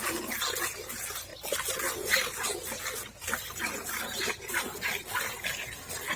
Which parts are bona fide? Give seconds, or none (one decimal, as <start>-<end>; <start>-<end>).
0.0-6.2